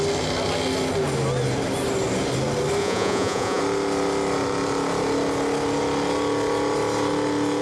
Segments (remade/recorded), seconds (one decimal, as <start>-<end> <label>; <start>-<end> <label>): 0.0-2.8 recorded; 2.8-3.6 remade; 3.6-7.6 recorded